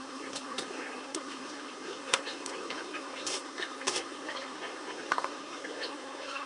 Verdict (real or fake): fake